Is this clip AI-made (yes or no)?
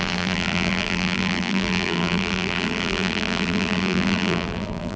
yes